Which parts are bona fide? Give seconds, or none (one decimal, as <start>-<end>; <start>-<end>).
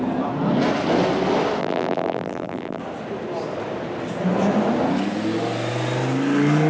0.0-1.6; 2.8-6.7